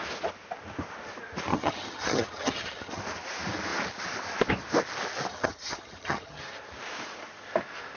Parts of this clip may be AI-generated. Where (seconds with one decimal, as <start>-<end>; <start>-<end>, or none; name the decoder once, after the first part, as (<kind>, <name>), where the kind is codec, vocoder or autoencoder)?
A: 1.5-3.0 (vocoder, HiFi-GAN); 5.3-6.4